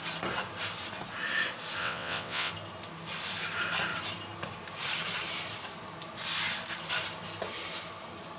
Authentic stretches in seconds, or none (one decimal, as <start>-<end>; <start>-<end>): 0.0-1.8; 2.5-8.4